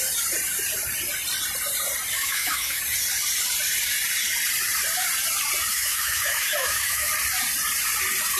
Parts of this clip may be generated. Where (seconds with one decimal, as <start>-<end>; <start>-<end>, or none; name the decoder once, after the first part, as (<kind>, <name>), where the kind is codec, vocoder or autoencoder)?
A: 2.2-2.8 (autoencoder, DAC-VAE); 5.7-7.1